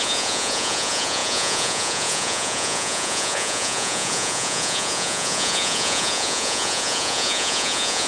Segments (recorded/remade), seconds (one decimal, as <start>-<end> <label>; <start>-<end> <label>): 0.0-8.1 remade